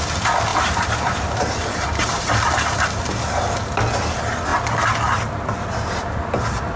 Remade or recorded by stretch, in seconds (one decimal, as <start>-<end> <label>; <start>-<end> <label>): 0.0-0.5 recorded; 0.5-3.2 remade; 3.2-6.8 recorded